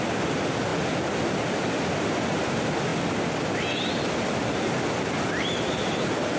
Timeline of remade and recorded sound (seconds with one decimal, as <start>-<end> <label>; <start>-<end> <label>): 0.0-6.4 recorded